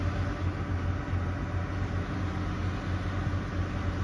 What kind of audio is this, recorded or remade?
recorded